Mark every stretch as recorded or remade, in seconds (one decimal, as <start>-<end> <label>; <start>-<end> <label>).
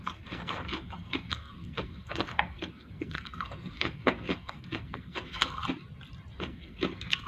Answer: 0.0-5.6 remade; 5.6-6.4 recorded; 6.4-7.3 remade